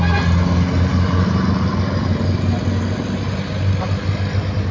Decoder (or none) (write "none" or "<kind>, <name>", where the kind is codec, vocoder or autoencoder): none